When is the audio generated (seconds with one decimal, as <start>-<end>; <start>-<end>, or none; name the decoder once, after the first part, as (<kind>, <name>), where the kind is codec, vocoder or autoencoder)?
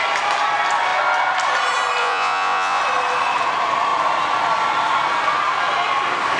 2.0-2.8 (vocoder, Vocos)